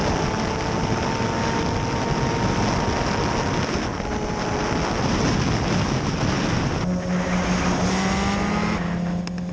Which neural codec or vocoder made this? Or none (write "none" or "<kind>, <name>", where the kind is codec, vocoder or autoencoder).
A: none